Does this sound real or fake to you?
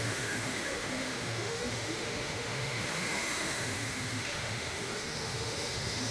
fake